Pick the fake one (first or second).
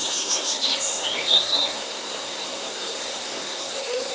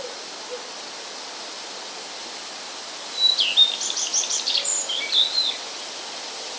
first